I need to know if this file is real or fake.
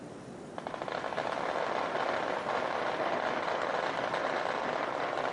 real